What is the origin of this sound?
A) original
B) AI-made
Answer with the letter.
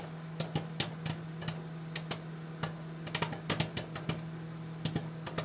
A